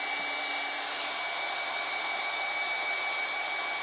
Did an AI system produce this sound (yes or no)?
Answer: no